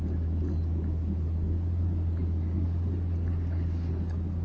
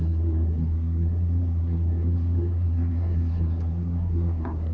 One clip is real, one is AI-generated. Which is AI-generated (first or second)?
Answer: second